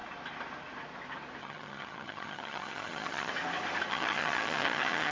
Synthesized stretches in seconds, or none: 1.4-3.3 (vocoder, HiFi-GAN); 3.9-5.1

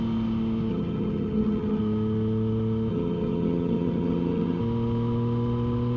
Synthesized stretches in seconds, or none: 0.7-1.8 (vocoder, HiFi-GAN); 2.9-4.6

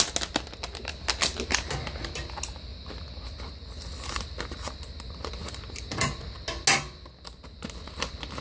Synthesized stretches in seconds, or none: none

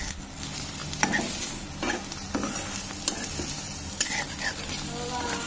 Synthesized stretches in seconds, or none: none